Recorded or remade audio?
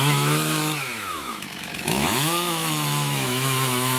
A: remade